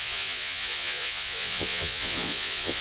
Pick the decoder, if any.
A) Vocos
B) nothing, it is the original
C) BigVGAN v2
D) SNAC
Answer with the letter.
A